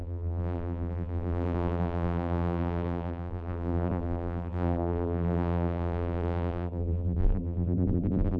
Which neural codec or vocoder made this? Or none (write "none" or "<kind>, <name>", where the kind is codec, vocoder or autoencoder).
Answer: vocoder, BigVGAN v2